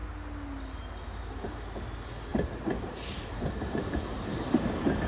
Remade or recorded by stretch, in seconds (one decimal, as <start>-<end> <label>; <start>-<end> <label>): 0.0-2.3 recorded; 2.3-5.1 remade